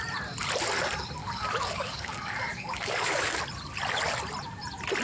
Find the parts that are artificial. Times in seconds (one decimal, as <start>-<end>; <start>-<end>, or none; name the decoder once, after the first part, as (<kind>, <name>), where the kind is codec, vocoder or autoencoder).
1.2-3.4 (codec, DAC)